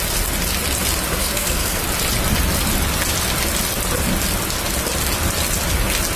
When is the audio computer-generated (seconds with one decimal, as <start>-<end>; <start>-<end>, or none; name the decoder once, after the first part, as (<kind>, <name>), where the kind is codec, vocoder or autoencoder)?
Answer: 1.2-1.8 (codec, SNAC)